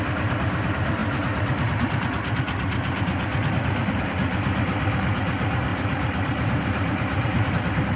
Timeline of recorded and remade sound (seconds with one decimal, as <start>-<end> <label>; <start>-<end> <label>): 0.0-5.7 recorded; 5.7-7.5 remade; 7.5-8.0 recorded